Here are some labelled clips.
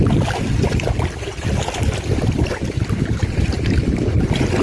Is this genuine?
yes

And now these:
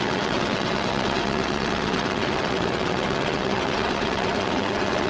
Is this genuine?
no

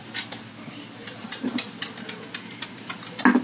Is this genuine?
yes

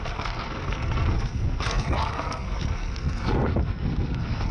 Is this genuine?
no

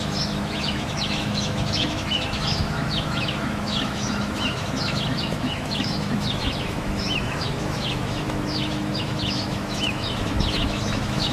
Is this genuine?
no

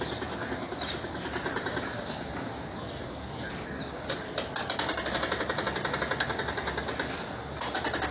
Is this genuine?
yes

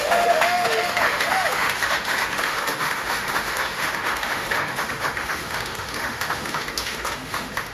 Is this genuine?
no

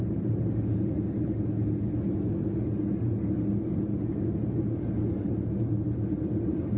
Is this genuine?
yes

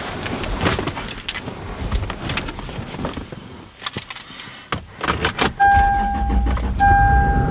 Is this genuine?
yes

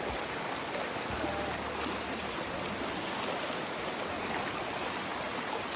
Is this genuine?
yes